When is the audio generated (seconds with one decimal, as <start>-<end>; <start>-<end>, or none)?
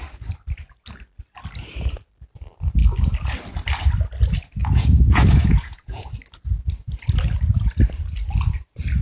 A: 4.6-6.1